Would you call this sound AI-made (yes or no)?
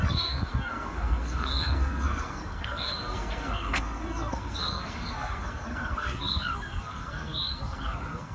yes